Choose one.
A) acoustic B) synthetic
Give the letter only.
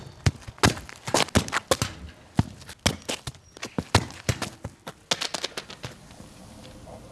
A